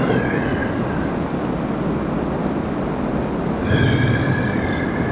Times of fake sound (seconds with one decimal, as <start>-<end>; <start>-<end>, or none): 0.0-0.6; 3.7-5.1